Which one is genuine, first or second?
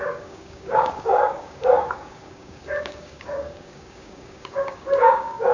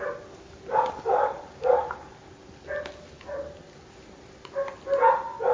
second